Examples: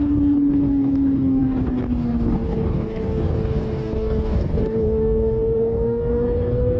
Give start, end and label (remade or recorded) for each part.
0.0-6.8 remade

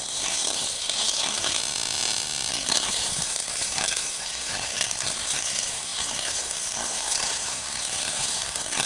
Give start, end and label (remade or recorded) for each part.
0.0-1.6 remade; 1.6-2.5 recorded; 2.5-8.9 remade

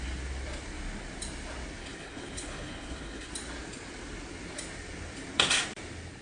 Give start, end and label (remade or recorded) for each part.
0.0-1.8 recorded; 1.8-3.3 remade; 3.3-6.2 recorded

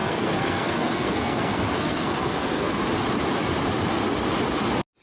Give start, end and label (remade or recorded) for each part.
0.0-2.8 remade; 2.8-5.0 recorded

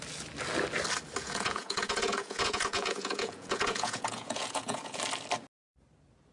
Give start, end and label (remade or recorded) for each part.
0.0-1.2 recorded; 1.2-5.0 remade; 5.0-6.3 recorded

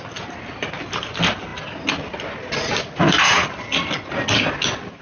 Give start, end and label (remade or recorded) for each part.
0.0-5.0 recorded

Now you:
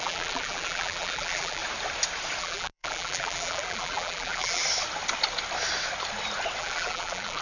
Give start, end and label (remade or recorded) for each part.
0.0-1.6 remade; 1.6-2.4 recorded; 2.4-4.6 remade; 4.6-6.6 recorded; 6.6-7.4 remade